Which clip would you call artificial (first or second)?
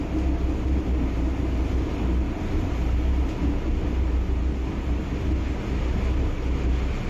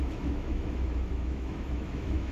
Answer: second